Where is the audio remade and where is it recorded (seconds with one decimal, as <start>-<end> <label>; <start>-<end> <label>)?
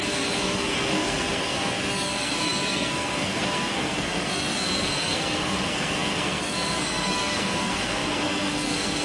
0.0-9.0 remade